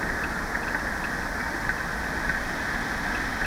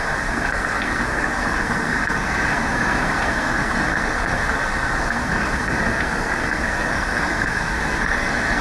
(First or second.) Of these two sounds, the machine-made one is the second